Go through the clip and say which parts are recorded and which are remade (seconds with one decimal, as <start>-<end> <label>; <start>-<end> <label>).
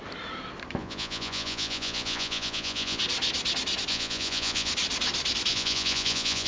0.0-0.8 recorded; 0.8-3.0 remade; 3.0-3.9 recorded; 3.9-4.7 remade; 4.7-5.5 recorded; 5.5-6.5 remade